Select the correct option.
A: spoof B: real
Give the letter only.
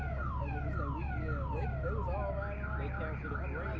B